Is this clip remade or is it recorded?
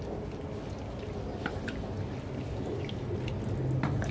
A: recorded